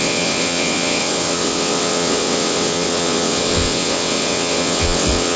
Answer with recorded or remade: remade